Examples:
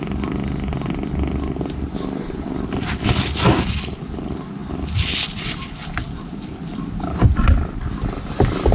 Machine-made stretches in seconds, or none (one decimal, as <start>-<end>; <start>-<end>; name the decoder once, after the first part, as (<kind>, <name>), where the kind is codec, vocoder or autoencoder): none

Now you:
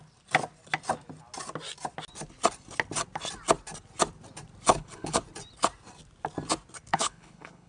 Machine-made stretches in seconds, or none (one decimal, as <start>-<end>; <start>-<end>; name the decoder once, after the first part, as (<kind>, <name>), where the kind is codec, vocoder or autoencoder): 4.7-5.2 (codec, HILCodec); 6.9-7.7

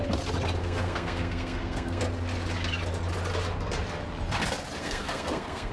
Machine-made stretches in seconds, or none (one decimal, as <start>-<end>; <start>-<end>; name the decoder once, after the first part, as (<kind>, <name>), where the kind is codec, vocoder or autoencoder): 0.6-2.0 (codec, SNAC); 4.8-5.7

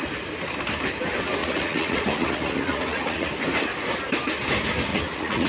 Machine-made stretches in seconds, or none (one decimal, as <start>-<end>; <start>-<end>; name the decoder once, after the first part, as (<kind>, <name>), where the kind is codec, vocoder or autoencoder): 1.4-3.3 (vocoder, Vocos); 4.9-5.5

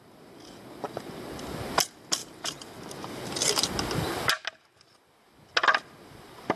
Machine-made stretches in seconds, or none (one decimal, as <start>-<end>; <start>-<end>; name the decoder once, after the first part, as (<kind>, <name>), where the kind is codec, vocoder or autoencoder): 2.2-3.3 (vocoder, BigVGAN v2)